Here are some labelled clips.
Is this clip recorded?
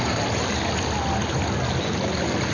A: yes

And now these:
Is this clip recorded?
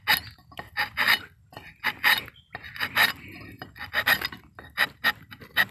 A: yes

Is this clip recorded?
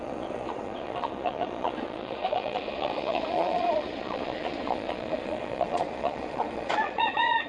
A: no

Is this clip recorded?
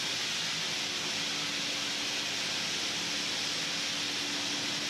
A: yes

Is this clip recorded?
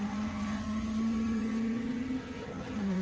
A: no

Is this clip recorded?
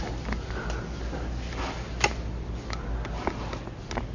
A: yes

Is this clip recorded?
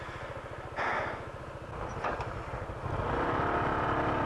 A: yes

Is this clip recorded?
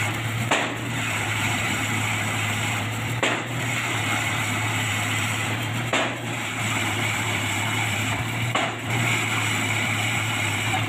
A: no